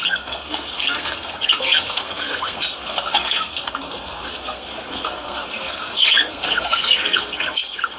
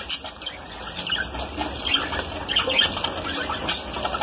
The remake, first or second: first